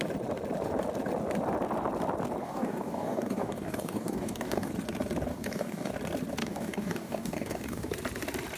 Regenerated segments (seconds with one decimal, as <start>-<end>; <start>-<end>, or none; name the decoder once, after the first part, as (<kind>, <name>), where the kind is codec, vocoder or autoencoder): 2.4-4.7 (codec, DAC); 5.3-5.9; 6.4-7.9